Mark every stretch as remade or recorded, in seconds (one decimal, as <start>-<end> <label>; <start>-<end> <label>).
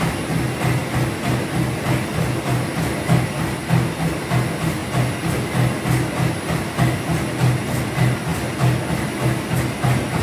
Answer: 0.0-10.2 recorded